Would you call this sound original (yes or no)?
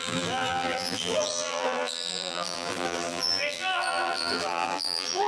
no